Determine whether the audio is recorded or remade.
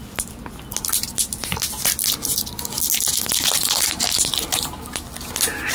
recorded